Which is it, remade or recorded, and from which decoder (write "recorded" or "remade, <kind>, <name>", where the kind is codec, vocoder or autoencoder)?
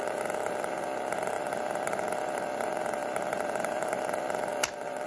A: remade, vocoder, BigVGAN v2